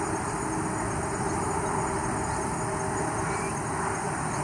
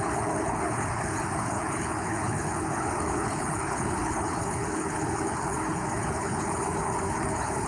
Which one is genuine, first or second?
first